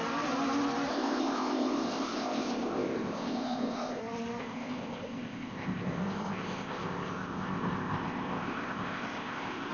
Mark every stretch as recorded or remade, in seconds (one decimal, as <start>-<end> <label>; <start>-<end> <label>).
0.0-0.9 recorded; 0.9-4.0 remade; 4.0-4.4 recorded; 4.4-9.7 remade